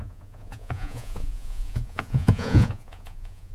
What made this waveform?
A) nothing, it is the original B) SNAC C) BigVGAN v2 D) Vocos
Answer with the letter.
D